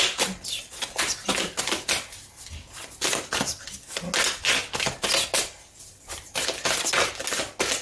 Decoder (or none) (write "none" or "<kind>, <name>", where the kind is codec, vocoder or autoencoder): none